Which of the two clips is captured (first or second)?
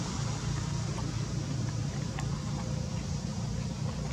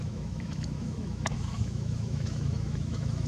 first